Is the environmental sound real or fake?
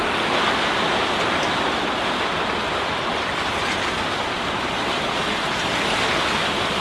fake